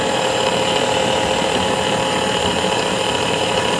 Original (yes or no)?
no